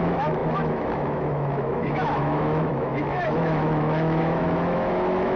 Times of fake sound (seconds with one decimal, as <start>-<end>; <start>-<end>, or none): 0.0-5.4